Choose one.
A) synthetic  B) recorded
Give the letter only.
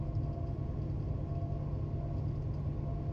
B